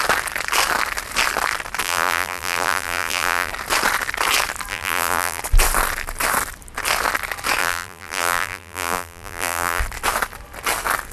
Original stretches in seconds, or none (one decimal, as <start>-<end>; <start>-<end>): 0.0-1.8; 3.5-4.7; 5.4-7.6; 9.8-11.1